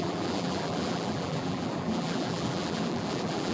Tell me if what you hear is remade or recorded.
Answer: remade